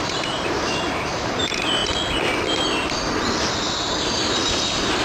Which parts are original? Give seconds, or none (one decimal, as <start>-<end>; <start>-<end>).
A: 1.8-4.4